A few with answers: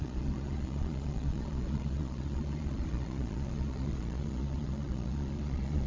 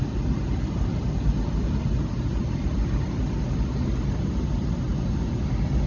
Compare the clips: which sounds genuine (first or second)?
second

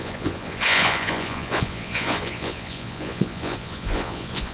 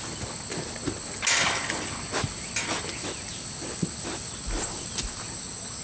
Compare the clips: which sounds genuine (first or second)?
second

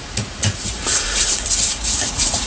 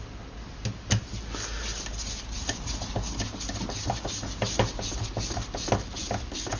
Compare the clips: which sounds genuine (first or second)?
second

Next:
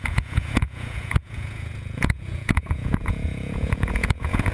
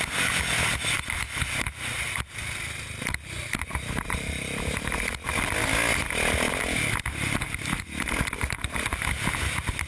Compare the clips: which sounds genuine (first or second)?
second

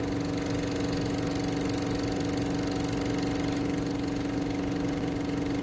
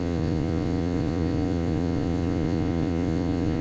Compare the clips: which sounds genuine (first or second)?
first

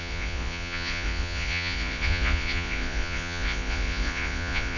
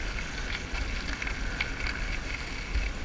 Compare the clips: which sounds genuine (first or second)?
second